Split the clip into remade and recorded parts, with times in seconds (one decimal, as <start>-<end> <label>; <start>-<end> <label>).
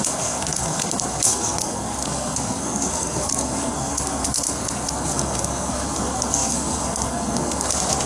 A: 0.0-8.1 remade